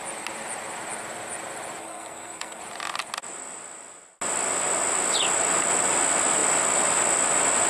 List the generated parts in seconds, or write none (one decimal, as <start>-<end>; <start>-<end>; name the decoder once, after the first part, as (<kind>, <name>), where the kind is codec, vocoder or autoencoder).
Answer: 1.8-2.6 (codec, SNAC)